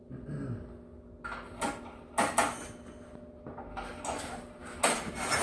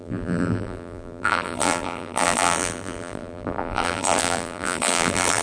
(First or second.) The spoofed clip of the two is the second